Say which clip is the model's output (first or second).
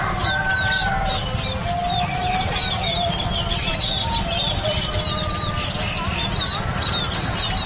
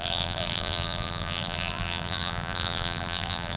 second